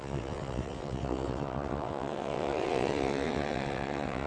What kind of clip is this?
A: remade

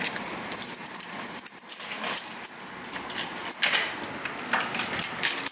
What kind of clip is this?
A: recorded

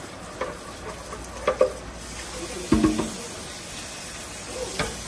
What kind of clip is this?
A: recorded